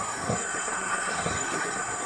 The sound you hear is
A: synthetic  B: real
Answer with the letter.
A